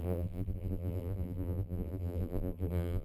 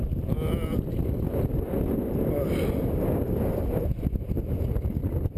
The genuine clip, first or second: second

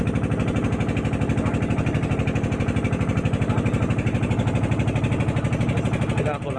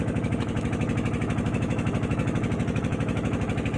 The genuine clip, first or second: first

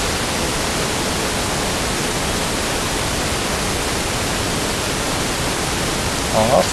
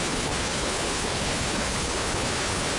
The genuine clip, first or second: first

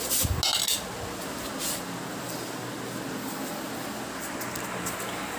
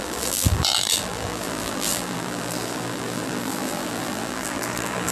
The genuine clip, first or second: first